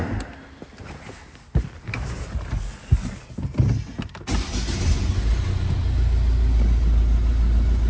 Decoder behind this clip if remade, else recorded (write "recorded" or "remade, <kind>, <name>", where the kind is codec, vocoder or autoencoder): recorded